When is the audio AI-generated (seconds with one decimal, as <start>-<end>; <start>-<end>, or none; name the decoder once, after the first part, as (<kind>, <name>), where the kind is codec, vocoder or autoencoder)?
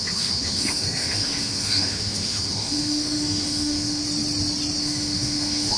0.0-4.0 (autoencoder, DAC-VAE); 4.8-5.8